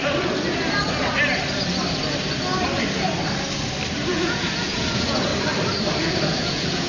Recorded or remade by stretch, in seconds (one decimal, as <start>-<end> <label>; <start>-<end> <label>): 0.0-4.1 recorded; 4.1-5.3 remade; 5.3-6.0 recorded; 6.0-6.9 remade